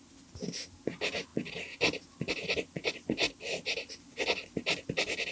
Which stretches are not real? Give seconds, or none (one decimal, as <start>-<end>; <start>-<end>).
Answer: none